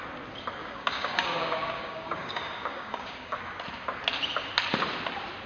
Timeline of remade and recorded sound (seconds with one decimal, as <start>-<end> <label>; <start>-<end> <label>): 0.0-0.6 recorded; 0.6-3.6 remade; 3.6-5.5 recorded